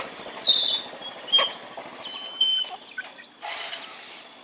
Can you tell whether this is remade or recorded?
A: recorded